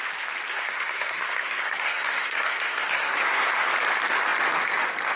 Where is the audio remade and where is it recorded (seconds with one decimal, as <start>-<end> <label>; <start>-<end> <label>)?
0.0-0.5 recorded; 0.5-3.6 remade; 3.6-5.2 recorded